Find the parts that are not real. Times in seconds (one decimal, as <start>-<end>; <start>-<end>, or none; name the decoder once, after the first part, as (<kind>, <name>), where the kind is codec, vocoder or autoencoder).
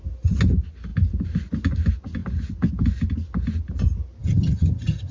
4.2-5.1 (vocoder, HiFi-GAN)